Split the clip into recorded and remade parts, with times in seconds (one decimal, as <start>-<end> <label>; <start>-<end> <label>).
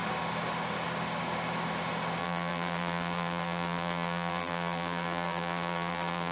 0.0-2.2 recorded; 2.2-6.3 remade